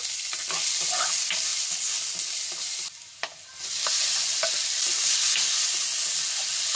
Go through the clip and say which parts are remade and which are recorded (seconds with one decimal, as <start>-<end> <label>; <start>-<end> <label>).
0.0-6.8 recorded